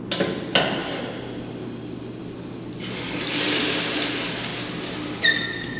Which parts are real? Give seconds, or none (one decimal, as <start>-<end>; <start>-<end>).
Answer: 0.0-5.8